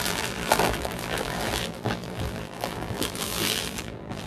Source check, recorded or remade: remade